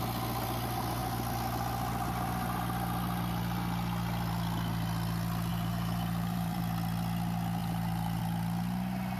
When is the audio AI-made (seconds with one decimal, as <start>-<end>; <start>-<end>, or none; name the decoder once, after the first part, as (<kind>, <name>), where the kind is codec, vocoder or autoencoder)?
5.5-6.6 (vocoder, BigVGAN v2); 7.6-8.2